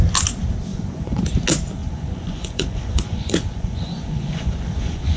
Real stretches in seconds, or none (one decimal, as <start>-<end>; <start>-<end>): 0.0-0.7; 1.2-1.8